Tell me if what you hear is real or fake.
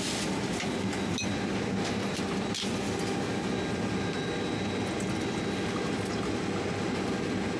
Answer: real